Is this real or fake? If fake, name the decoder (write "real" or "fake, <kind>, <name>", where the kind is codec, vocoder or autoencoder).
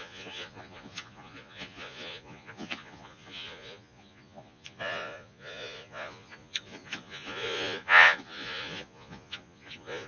fake, vocoder, Vocos